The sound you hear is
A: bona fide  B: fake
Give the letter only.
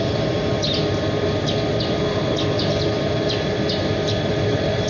A